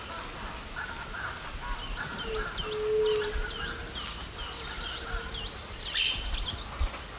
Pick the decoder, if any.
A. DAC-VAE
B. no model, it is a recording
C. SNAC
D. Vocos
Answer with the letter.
B